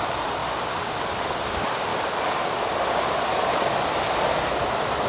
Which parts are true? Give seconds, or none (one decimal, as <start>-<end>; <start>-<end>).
0.0-0.4; 1.3-1.9; 3.6-5.1